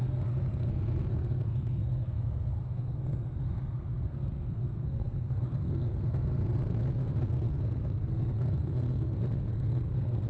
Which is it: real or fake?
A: fake